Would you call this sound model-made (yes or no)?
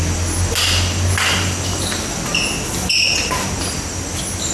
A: no